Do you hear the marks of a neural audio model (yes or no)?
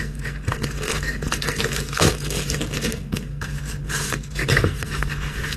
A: yes